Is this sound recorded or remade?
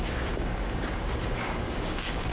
remade